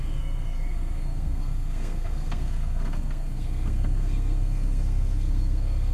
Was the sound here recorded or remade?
remade